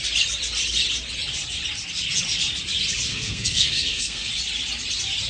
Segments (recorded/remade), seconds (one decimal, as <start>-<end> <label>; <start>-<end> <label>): 0.0-3.1 recorded; 3.1-4.3 remade; 4.3-5.3 recorded